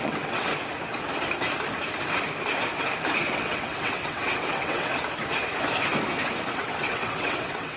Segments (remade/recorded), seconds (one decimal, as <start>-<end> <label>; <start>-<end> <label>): 0.0-0.5 remade; 0.5-3.3 recorded; 3.3-4.9 remade; 4.9-6.5 recorded; 6.5-7.8 remade

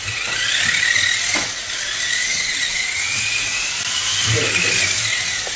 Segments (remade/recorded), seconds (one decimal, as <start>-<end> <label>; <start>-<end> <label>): 0.0-2.2 recorded; 2.2-3.2 remade; 3.2-5.6 recorded